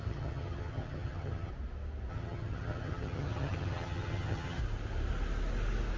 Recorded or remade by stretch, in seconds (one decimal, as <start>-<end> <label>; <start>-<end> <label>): 0.0-1.5 remade; 1.5-2.1 recorded; 2.1-4.6 remade; 4.6-6.0 recorded